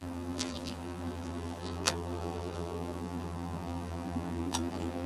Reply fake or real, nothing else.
fake